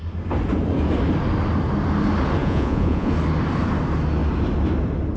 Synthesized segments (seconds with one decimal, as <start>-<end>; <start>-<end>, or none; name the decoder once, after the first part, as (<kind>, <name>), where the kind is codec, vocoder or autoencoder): 2.4-3.1 (vocoder, Vocos)